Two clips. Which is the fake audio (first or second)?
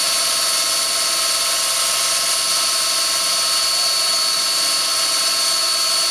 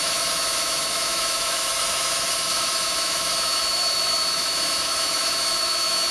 second